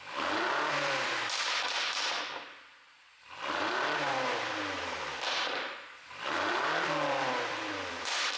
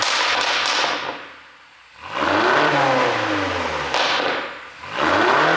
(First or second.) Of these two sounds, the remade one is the first